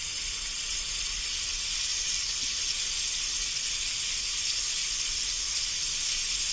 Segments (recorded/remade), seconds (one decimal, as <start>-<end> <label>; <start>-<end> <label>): 0.0-6.5 recorded

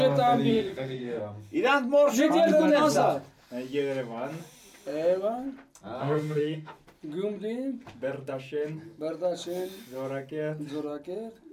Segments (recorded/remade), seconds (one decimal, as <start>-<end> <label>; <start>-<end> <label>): 0.0-0.5 recorded; 0.5-1.2 remade; 1.2-6.0 recorded; 6.0-6.8 remade; 6.8-11.5 recorded

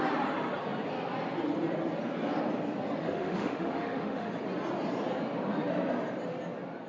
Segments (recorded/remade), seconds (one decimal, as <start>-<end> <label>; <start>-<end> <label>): 0.0-3.0 recorded; 3.0-4.3 remade; 4.3-6.9 recorded

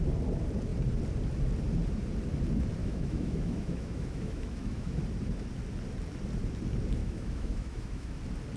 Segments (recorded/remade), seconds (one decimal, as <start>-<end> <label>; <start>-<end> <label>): 0.0-2.8 recorded; 2.8-5.0 remade; 5.0-7.0 recorded; 7.0-8.2 remade; 8.2-8.6 recorded